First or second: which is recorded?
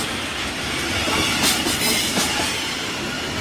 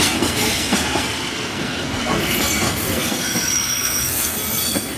first